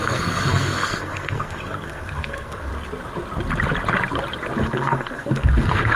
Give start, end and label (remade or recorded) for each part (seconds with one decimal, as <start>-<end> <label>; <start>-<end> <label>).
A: 0.0-2.7 remade; 2.7-4.6 recorded; 4.6-5.9 remade